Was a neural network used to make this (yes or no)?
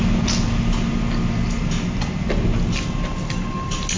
no